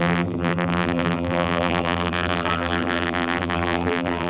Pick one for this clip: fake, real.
fake